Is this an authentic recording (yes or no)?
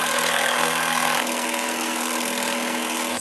no